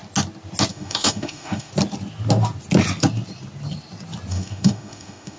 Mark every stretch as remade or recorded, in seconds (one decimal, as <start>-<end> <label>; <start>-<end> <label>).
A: 0.0-0.7 recorded; 0.7-1.7 remade; 1.7-4.3 recorded; 4.3-5.4 remade